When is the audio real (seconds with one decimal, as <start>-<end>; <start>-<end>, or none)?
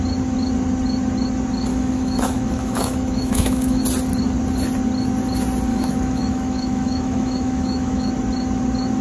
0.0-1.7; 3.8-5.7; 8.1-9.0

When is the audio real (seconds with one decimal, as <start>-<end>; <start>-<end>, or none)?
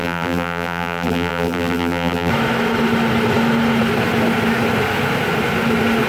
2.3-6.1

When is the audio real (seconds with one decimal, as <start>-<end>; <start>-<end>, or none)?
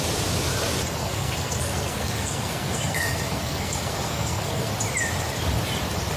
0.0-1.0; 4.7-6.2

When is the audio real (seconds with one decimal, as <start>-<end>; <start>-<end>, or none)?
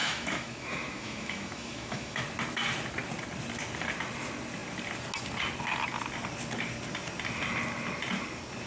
2.2-8.7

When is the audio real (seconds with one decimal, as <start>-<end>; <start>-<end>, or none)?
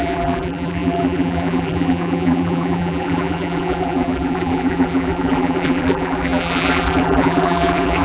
none